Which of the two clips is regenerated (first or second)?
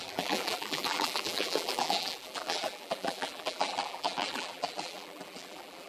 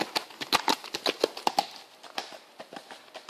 first